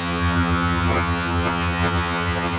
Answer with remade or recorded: remade